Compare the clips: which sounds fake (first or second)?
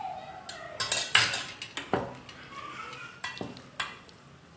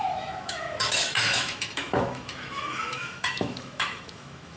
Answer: second